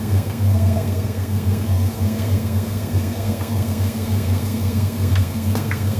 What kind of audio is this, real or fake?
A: fake